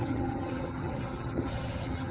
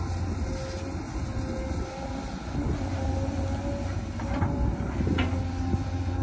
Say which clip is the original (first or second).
second